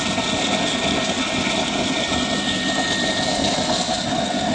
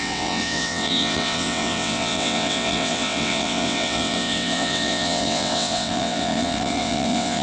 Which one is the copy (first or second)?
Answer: second